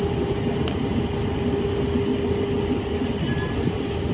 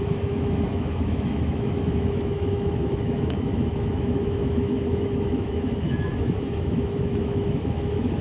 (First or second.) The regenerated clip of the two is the second